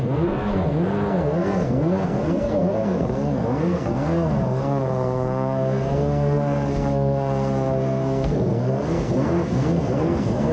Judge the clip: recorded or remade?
remade